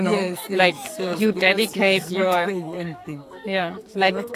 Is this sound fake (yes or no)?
yes